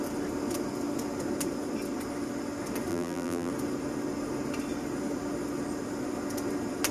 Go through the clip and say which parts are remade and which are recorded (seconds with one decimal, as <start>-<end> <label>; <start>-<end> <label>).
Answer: 0.0-2.9 recorded; 2.9-3.5 remade; 3.5-6.9 recorded